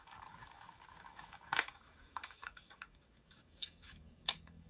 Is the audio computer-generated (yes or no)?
yes